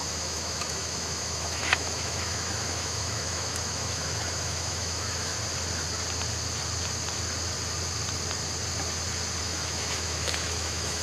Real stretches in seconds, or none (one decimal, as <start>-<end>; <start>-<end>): 5.3-9.4